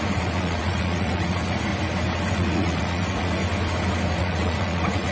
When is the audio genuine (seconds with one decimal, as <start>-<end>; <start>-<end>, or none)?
1.7-2.3; 3.4-4.1